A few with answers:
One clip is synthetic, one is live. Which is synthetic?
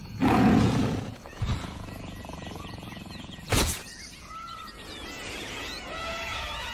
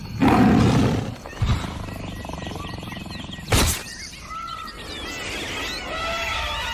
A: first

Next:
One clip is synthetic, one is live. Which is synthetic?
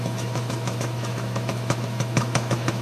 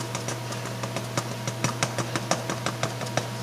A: first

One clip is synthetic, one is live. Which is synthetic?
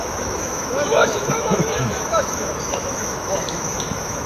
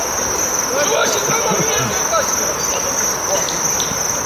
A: first